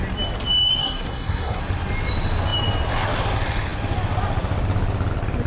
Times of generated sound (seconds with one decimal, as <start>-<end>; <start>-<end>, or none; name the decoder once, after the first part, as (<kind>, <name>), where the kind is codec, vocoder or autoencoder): 0.8-1.6 (codec, SNAC)